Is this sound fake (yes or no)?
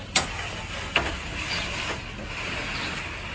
no